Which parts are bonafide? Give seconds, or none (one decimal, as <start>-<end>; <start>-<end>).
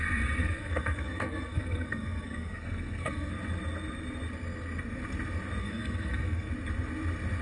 0.0-0.4; 3.3-5.6; 6.5-7.4